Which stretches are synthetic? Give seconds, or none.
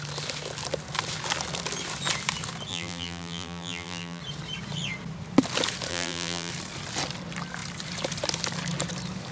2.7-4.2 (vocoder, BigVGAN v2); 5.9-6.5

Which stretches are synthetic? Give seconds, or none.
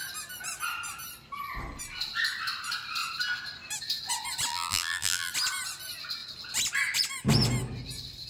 4.5-5.3 (vocoder, BigVGAN v2)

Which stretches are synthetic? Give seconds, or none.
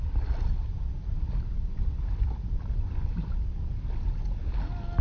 none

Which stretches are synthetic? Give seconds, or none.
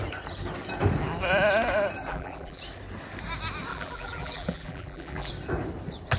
2.1-2.6 (vocoder, BigVGAN v2); 3.7-5.3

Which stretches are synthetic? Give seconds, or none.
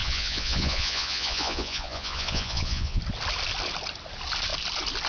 0.0-3.0 (vocoder, Vocos)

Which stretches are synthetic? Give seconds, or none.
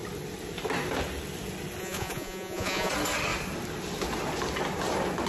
1.8-2.9 (vocoder, Vocos)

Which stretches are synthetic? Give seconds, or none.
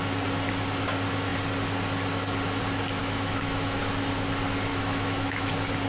3.0-3.8 (autoencoder, DAC-VAE); 4.7-5.5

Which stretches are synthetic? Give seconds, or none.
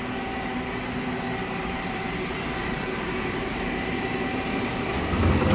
1.6-4.9 (vocoder, BigVGAN v2)